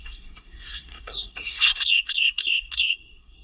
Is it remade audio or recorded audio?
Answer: remade